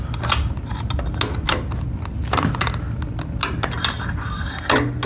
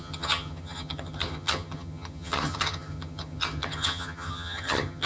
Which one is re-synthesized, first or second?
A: second